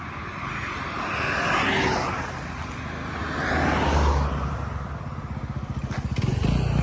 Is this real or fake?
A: real